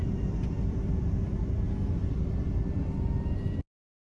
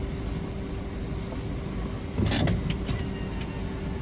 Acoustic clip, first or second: second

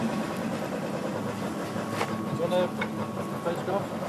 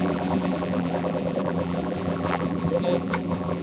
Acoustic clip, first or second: first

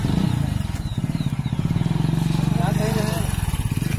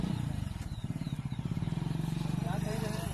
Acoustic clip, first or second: first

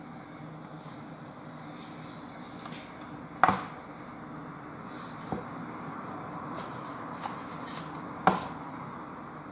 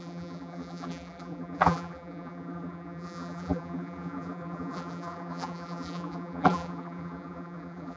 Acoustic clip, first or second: first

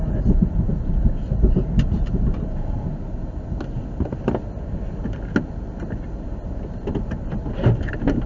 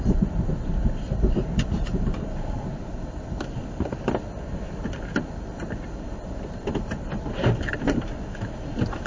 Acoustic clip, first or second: first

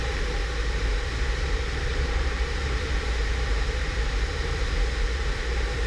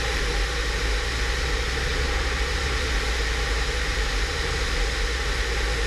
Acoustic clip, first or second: second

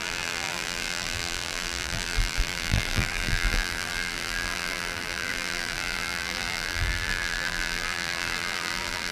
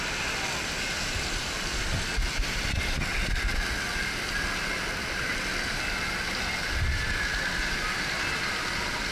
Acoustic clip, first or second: second